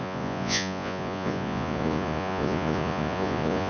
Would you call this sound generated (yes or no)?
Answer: yes